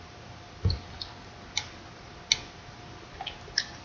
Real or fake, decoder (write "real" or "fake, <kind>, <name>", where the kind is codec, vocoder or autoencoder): real